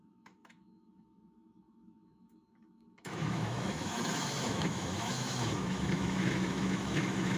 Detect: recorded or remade remade